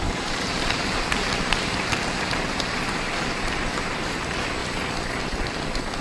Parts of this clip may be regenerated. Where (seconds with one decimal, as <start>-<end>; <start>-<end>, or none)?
0.0-4.6; 5.2-6.0